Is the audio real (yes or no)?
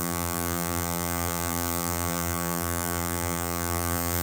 no